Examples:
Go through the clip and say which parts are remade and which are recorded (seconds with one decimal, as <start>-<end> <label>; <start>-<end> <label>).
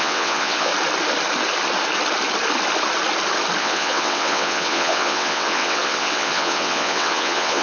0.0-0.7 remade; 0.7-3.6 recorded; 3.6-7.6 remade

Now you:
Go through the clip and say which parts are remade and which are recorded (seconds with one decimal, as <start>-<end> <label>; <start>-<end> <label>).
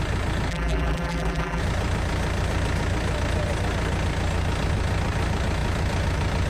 0.0-0.5 recorded; 0.5-1.6 remade; 1.6-6.5 recorded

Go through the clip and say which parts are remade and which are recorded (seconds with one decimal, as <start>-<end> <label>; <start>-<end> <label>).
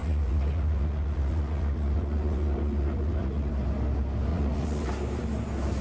0.0-3.5 remade; 3.5-4.3 recorded; 4.3-4.9 remade; 4.9-5.8 recorded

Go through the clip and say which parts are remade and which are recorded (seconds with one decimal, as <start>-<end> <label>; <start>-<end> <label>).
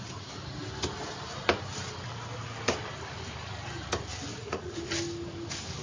0.0-4.3 recorded; 4.3-4.8 remade; 4.8-5.8 recorded